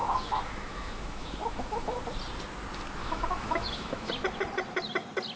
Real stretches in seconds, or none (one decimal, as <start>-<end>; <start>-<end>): 2.0-3.0; 4.1-5.4